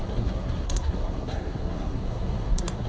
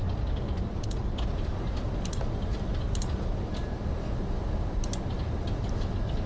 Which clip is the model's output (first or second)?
first